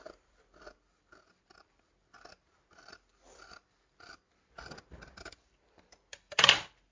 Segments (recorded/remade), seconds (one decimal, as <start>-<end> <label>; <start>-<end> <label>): 0.0-6.9 remade